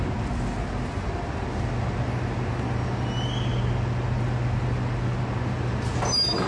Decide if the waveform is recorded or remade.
recorded